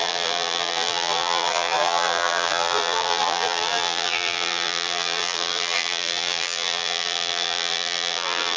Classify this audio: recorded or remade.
remade